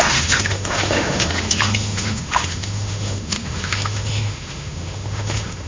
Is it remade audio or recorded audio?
remade